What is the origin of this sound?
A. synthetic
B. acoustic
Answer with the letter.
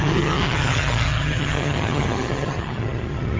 A